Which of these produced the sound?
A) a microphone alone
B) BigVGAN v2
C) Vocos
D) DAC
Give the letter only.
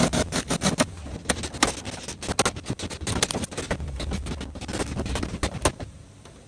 A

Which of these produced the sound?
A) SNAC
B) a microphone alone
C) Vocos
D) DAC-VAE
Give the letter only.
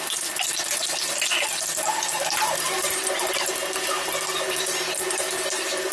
B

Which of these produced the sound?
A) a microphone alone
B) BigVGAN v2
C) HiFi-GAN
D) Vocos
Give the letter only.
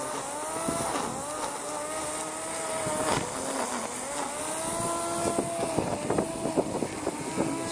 A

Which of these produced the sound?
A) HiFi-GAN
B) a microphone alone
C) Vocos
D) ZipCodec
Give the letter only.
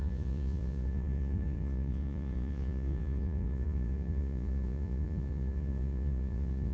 C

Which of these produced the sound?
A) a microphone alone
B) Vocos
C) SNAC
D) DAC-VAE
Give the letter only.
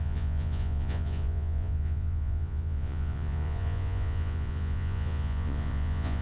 B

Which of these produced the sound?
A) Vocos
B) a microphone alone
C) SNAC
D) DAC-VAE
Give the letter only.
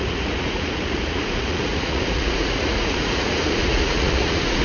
A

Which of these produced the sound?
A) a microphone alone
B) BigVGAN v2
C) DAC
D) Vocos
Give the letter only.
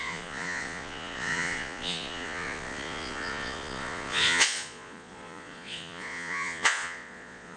D